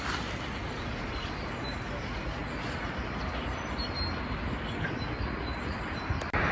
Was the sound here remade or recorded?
recorded